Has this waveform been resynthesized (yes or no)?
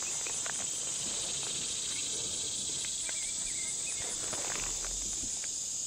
no